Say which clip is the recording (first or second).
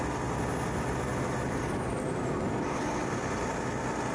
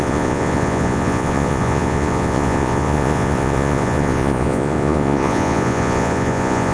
first